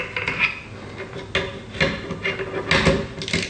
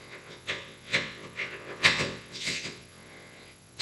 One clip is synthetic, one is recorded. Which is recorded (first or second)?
first